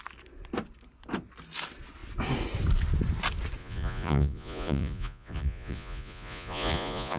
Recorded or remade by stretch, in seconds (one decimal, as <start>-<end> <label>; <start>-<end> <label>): 0.0-3.6 recorded; 3.6-7.2 remade